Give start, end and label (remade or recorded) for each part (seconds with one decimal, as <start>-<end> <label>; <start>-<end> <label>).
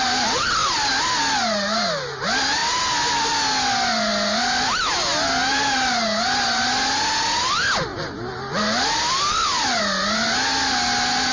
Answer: 0.0-11.3 recorded